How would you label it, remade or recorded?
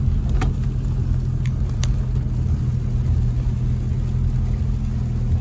recorded